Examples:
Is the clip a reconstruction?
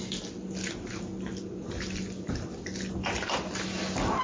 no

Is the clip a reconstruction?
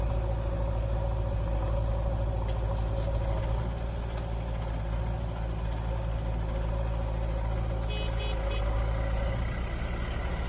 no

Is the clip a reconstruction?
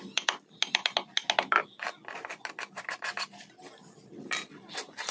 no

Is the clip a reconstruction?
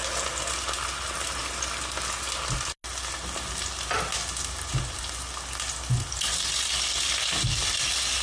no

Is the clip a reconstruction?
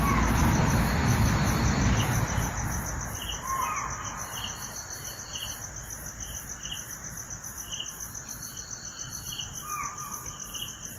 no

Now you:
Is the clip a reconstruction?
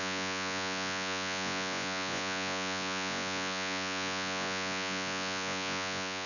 yes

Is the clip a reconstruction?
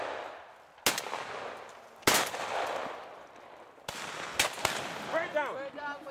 no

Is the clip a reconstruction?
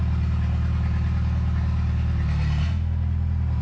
no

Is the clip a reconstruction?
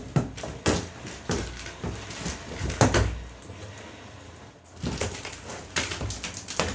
no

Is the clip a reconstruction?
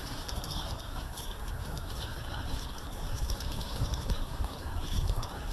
yes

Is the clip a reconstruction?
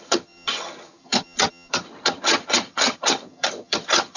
yes